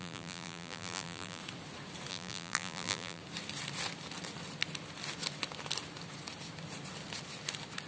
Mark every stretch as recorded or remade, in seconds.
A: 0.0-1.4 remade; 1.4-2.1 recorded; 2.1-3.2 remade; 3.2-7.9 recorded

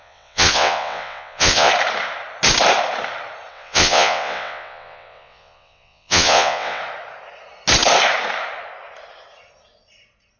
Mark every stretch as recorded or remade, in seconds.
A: 0.0-1.7 remade; 1.7-3.5 recorded; 3.5-6.8 remade; 6.8-10.4 recorded

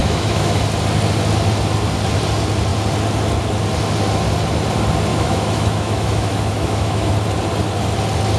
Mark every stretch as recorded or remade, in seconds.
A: 0.0-0.6 remade; 0.6-5.1 recorded; 5.1-7.1 remade; 7.1-8.4 recorded